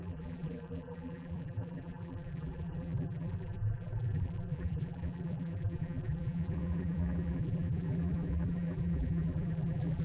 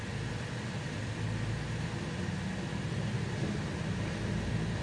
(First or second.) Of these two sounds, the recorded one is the second